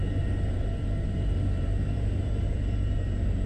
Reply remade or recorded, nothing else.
remade